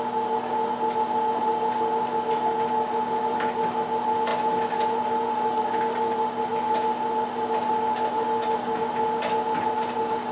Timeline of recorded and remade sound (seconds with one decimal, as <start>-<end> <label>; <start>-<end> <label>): 0.0-10.3 recorded